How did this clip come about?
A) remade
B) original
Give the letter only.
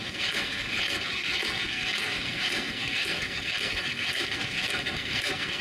A